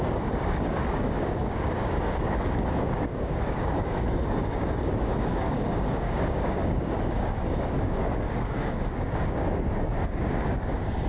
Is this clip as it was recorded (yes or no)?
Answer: no